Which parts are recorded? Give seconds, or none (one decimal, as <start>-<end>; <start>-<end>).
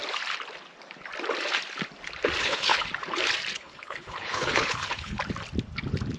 0.0-2.4; 2.9-3.5; 5.2-6.2